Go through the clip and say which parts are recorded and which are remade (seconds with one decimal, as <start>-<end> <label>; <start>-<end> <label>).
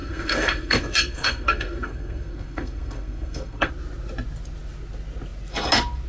0.0-3.7 remade; 3.7-6.1 recorded